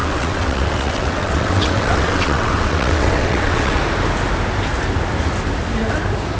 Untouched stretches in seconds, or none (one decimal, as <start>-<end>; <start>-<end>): 3.8-6.4